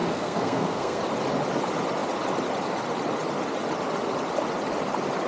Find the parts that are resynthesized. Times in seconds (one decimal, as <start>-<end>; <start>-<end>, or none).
0.0-1.0